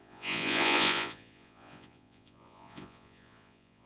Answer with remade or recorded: remade